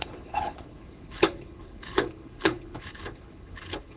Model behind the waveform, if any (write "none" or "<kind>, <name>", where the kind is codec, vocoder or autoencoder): codec, HILCodec